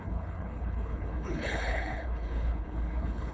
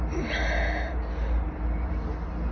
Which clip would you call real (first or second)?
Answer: second